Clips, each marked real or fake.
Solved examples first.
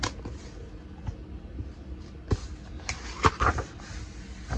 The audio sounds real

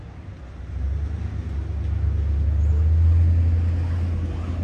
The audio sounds real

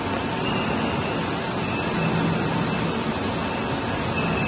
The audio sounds real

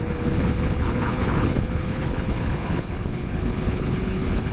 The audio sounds fake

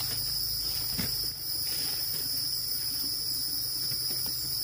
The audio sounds real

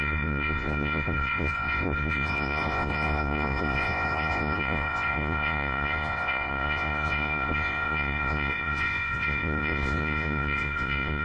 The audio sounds fake